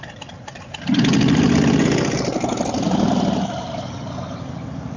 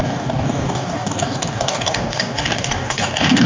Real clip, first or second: first